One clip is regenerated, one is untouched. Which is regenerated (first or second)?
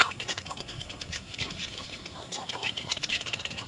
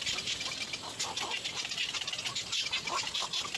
first